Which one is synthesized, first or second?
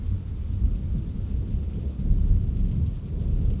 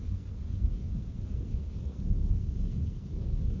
second